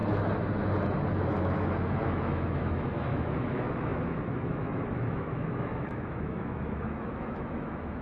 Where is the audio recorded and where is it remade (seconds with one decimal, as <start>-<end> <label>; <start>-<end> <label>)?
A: 0.0-1.1 recorded; 1.1-8.0 remade